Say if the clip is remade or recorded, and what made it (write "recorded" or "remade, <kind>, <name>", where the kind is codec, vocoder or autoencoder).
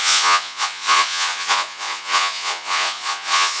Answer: remade, vocoder, Vocos